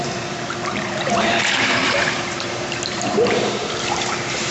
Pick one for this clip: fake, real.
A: fake